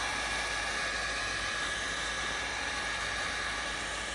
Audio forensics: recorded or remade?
recorded